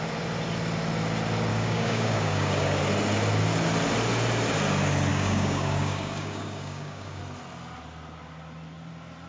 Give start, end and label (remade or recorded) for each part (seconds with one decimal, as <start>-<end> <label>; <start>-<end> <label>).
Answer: 0.0-1.5 recorded; 1.5-2.8 remade; 2.8-5.1 recorded; 5.1-7.2 remade; 7.2-9.3 recorded